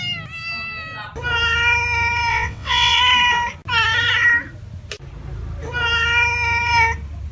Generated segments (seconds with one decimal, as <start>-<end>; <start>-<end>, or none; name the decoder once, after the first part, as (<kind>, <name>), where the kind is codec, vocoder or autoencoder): 2.3-3.0 (vocoder, WaveNeXt)